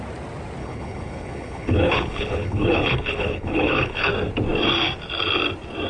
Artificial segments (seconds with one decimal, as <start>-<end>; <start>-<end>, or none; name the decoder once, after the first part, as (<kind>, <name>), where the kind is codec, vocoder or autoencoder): 0.6-4.1 (codec, HILCodec)